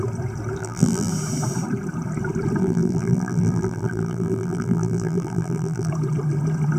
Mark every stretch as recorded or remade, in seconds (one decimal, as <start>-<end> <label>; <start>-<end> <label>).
0.0-0.6 recorded; 0.6-1.1 remade; 1.1-2.6 recorded; 2.6-5.9 remade; 5.9-6.8 recorded